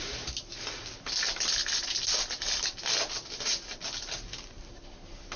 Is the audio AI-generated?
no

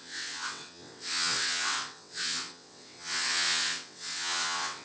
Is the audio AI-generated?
yes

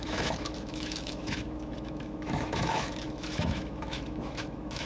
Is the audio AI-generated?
yes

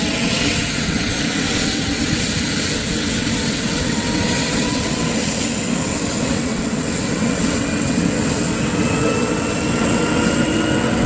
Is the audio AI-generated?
yes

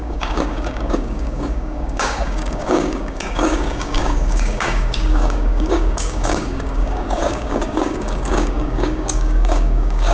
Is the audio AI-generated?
yes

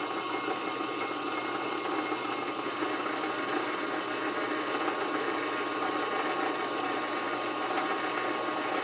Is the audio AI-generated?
no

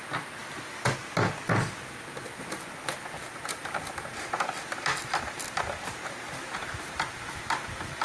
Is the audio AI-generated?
no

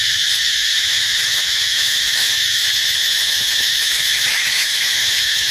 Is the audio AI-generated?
yes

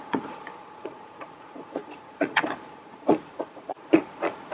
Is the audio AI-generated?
yes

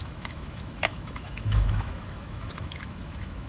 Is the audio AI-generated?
yes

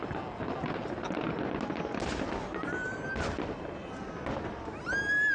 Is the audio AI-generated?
no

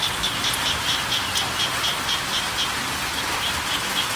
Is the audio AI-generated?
no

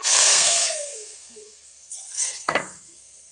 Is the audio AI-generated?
yes